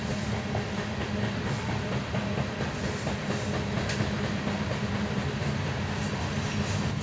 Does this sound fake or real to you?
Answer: real